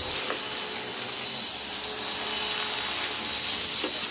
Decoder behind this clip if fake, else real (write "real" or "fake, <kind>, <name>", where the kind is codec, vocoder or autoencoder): real